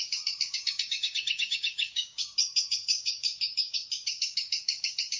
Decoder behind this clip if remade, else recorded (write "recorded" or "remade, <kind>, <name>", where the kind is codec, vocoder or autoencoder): remade, codec, DAC